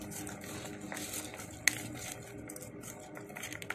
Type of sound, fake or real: real